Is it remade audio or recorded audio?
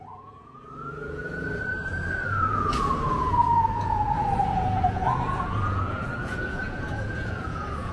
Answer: remade